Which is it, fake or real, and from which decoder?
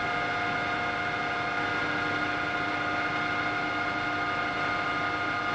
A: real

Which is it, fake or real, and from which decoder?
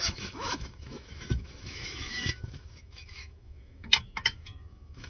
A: fake, autoencoder, DAC-VAE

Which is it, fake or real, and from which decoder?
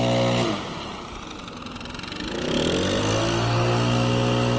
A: real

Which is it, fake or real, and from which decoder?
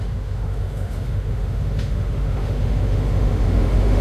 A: fake, autoencoder, DAC-VAE